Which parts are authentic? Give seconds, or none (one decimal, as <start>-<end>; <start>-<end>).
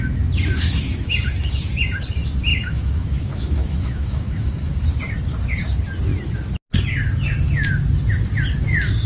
0.0-2.5; 4.7-9.1